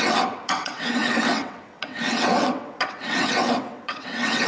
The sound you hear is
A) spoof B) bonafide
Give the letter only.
A